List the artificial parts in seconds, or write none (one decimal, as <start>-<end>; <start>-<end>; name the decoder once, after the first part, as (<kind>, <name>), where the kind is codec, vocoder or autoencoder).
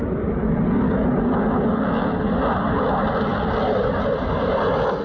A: none